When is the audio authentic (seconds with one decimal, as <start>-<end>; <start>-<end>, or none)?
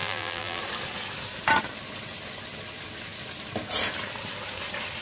0.6-5.0